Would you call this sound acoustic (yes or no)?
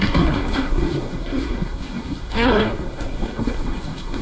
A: no